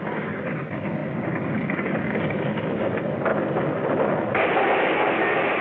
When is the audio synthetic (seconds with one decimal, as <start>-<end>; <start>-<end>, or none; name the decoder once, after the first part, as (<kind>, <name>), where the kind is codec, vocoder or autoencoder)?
0.0-3.3 (codec, DAC)